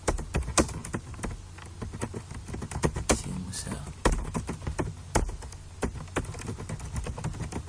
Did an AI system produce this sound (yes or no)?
no